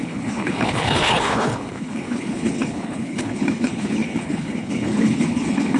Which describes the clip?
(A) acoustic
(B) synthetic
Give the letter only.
B